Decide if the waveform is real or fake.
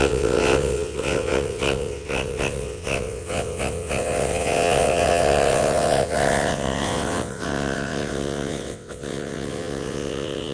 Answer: fake